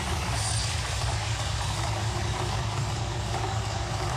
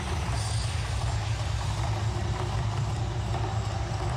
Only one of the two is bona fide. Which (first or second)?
second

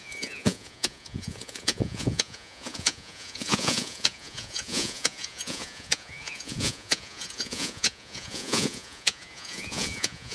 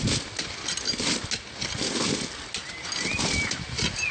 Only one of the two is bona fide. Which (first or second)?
second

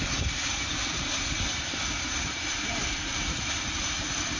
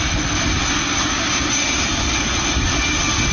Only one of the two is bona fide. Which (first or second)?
second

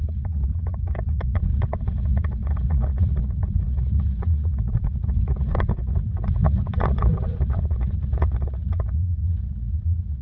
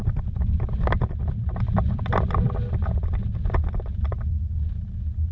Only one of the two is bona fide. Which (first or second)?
second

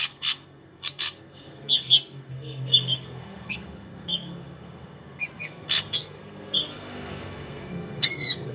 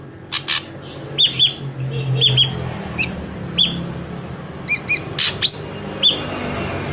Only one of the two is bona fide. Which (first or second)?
second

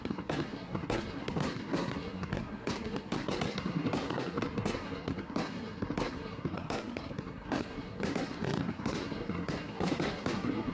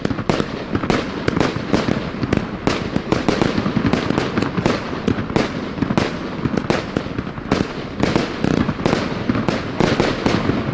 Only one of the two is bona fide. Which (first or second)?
second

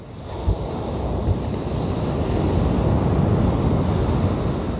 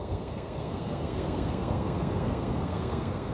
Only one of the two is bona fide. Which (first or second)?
first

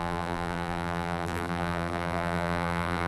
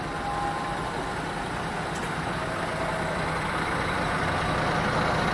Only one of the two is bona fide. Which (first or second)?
second